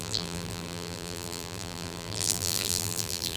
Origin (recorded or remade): remade